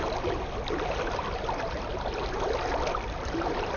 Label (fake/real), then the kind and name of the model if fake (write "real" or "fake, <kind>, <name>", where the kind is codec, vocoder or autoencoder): real